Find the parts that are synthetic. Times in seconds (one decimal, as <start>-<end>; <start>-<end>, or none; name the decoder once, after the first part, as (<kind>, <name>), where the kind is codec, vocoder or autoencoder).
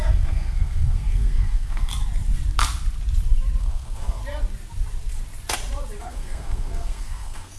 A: 0.0-1.9 (codec, SNAC); 3.6-4.2; 6.0-7.6